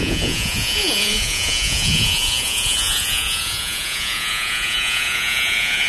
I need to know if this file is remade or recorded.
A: remade